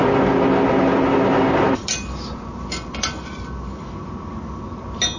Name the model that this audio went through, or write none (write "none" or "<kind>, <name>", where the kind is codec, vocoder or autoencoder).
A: none